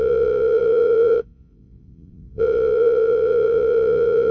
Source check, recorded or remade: remade